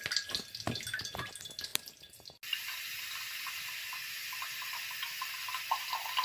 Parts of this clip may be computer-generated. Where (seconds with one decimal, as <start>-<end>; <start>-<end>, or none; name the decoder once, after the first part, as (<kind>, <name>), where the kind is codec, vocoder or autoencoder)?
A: none